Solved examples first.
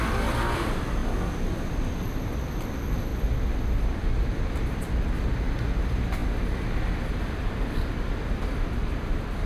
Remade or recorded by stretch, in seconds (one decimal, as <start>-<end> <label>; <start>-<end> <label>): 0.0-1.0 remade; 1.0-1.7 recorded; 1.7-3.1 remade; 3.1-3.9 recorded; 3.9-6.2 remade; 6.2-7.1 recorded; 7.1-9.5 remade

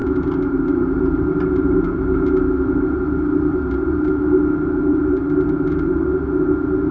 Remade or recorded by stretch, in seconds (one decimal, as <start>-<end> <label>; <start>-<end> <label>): 0.0-1.0 remade; 1.0-3.5 recorded; 3.5-4.2 remade; 4.2-4.9 recorded; 4.9-5.5 remade; 5.5-6.9 recorded

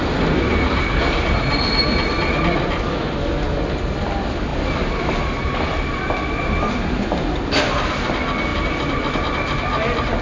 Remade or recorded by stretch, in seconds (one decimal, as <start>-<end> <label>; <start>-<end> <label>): 0.0-10.2 recorded

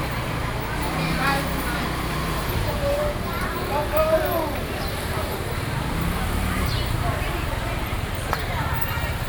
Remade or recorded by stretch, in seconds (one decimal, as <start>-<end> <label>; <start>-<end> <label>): 0.0-0.4 remade; 0.4-2.0 recorded; 2.0-9.3 remade

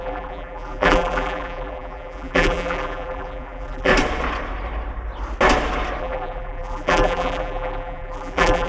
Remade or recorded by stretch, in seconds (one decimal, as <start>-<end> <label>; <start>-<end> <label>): 0.0-3.9 remade; 3.9-6.0 recorded; 6.0-8.7 remade

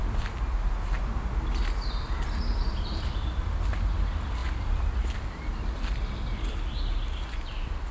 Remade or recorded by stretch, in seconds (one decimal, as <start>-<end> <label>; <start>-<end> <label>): 0.0-4.4 recorded; 4.4-5.9 remade; 5.9-7.9 recorded